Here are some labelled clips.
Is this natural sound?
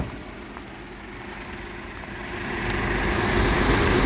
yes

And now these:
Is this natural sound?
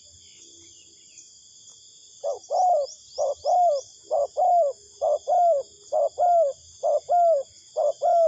yes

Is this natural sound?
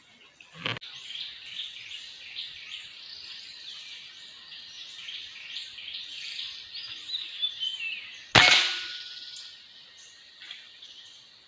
yes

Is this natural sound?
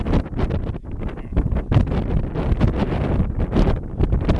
yes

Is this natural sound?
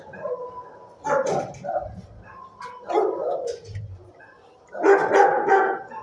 yes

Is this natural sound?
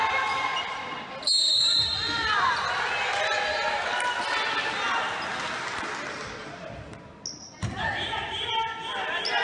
yes